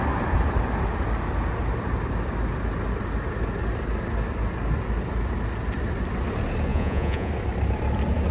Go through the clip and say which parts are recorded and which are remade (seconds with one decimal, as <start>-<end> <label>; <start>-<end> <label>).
0.0-6.7 recorded; 6.7-7.3 remade; 7.3-8.3 recorded